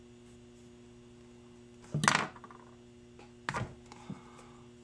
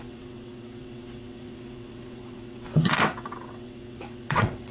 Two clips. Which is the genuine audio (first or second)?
first